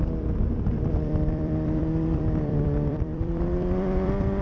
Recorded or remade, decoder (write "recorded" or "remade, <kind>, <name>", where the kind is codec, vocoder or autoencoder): remade, vocoder, BigVGAN v2